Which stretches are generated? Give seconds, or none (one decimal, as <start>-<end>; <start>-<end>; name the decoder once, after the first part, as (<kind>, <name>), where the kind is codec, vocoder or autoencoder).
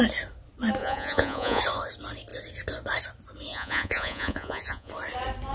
0.8-1.6 (vocoder, Vocos); 3.5-4.9